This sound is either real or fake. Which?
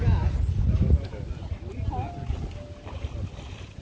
real